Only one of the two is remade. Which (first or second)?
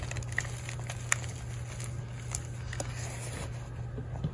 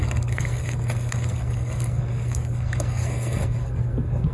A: second